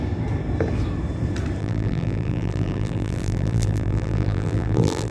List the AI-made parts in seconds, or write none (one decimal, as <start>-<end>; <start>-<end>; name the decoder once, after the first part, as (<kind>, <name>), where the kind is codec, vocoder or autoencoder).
1.6-5.1 (vocoder, BigVGAN v2)